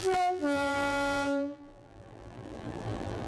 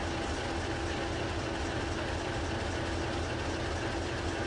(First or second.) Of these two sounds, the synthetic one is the first